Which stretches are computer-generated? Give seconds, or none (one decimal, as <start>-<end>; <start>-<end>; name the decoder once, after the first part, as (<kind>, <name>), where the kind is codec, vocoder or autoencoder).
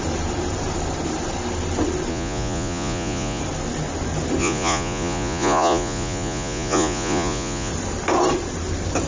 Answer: 2.1-3.4 (vocoder, Vocos); 4.4-7.7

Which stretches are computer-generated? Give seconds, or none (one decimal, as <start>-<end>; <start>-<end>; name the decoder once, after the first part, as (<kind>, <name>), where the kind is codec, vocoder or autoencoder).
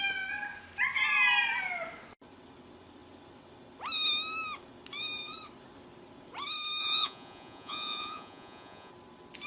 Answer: 6.8-8.9 (vocoder, Vocos)